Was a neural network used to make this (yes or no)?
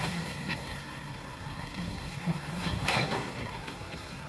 yes